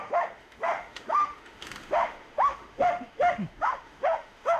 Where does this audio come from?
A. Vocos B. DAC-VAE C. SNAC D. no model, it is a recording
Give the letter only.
B